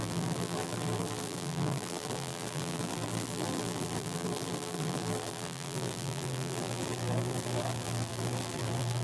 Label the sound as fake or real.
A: fake